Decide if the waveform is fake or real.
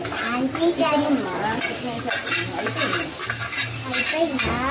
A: real